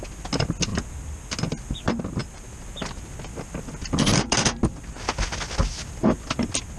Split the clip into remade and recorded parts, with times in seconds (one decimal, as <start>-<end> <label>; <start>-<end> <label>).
0.0-6.8 recorded